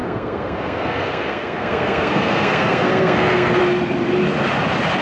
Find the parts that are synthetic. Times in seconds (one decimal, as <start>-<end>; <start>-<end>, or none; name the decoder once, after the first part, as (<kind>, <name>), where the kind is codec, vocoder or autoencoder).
0.0-3.6 (codec, SNAC)